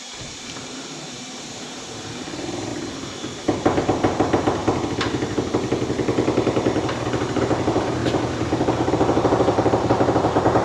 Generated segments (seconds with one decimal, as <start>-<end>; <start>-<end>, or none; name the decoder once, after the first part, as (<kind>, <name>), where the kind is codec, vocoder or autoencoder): 0.0-2.7 (vocoder, BigVGAN v2); 3.4-4.6; 5.9-8.0; 8.9-10.6